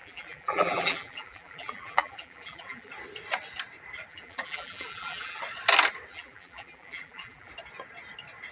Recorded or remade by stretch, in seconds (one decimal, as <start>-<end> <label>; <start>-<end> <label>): 0.0-2.9 remade; 2.9-4.1 recorded; 4.1-5.4 remade; 5.4-6.1 recorded; 6.1-7.5 remade; 7.5-8.5 recorded